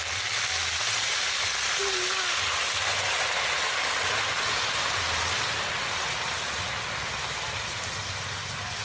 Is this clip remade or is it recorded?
recorded